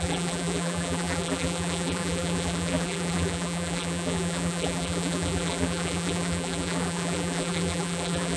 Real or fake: fake